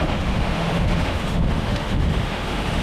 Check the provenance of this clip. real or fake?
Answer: fake